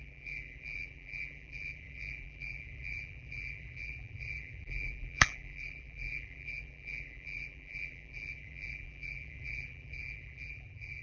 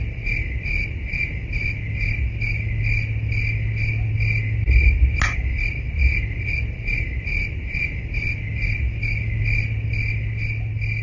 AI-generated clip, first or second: first